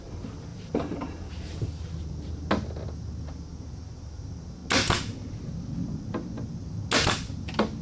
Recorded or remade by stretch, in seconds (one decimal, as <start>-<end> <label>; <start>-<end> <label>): 0.0-0.5 recorded; 0.5-2.3 remade; 2.3-7.8 recorded